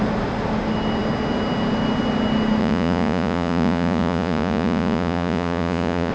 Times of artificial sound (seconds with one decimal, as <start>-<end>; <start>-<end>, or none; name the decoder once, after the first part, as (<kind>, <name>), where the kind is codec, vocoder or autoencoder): 2.6-6.1 (vocoder, Vocos)